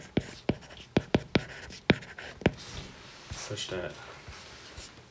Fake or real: real